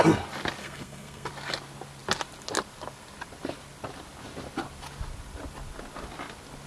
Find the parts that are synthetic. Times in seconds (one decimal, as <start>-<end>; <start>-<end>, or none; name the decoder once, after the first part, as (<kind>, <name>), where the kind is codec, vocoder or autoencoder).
0.6-1.3 (codec, SNAC)